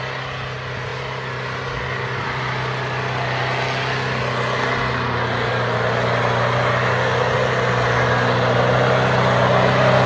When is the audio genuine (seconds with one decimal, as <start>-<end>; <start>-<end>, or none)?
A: 0.0-10.1